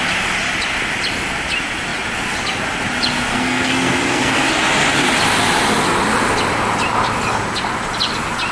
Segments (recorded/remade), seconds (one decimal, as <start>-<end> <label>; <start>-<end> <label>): 0.0-3.3 recorded; 3.3-4.5 remade; 4.5-8.5 recorded